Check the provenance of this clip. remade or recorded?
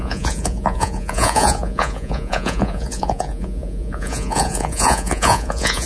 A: remade